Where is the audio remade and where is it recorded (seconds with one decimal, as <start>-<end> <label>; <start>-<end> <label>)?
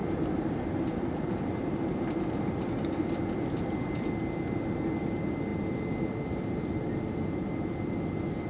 0.0-8.5 recorded